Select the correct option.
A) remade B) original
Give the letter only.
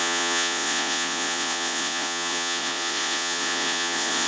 A